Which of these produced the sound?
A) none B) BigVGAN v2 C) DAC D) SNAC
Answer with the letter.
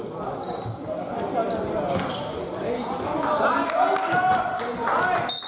A